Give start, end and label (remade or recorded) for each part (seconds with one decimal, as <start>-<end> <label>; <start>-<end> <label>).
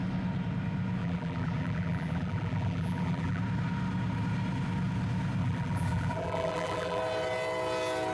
0.0-1.0 recorded; 1.0-3.4 remade; 3.4-5.4 recorded; 5.4-7.0 remade; 7.0-8.1 recorded